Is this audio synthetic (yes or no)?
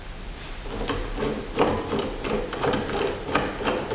no